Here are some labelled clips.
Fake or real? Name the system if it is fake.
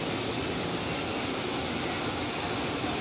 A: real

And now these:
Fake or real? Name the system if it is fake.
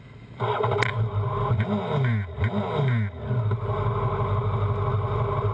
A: real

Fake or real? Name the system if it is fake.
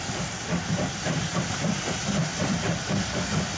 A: fake, vocoder, BigVGAN v2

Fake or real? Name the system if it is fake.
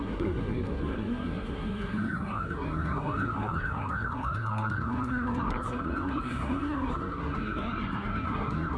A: fake, codec, SNAC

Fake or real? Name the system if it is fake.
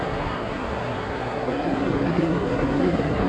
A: fake, codec, SNAC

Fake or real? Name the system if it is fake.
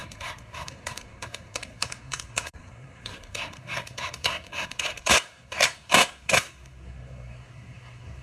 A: fake, codec, SNAC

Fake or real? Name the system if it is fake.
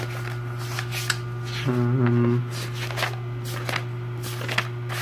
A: real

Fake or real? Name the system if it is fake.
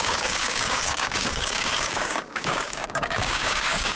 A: fake, codec, DAC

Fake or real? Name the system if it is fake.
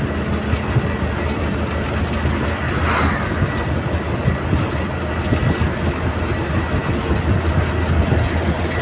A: real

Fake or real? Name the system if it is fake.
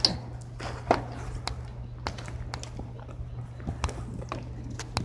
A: real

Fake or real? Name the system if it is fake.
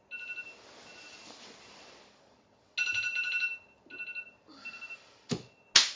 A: real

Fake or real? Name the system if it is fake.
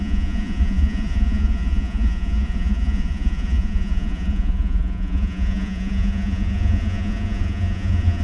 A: fake, vocoder, Vocos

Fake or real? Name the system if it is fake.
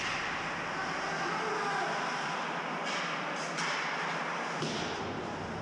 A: real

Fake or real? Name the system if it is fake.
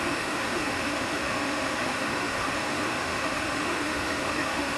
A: fake, autoencoder, DAC-VAE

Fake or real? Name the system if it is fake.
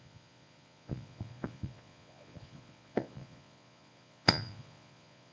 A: fake, vocoder, Vocos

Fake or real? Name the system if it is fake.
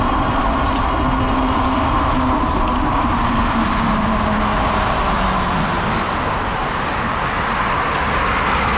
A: real